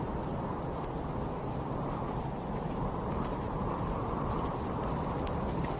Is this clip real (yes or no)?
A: yes